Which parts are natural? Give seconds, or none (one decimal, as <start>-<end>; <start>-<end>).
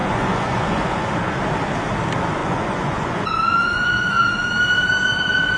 1.1-2.4; 4.5-5.6